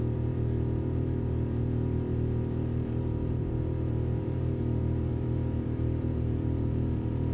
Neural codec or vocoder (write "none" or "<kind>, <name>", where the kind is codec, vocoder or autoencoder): vocoder, BigVGAN v2